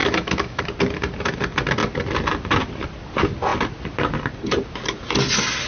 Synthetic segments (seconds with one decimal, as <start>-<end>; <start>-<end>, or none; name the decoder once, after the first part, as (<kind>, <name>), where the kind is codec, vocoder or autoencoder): 0.0-0.6 (autoencoder, DAC-VAE)

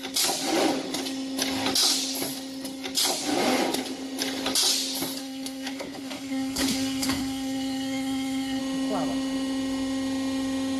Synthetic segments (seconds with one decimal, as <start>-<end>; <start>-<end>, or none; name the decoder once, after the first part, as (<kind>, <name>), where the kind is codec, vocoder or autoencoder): 5.2-8.6 (codec, SNAC)